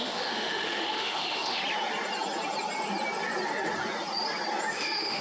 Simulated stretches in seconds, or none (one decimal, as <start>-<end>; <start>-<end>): 0.0-1.6; 4.7-5.2